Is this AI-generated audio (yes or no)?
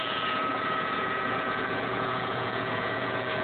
yes